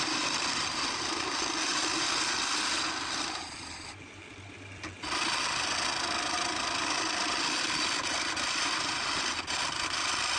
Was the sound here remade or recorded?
recorded